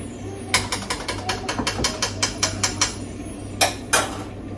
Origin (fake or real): real